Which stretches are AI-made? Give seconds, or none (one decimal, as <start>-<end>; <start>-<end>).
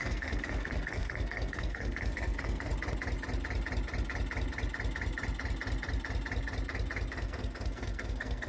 0.0-2.7; 7.1-8.5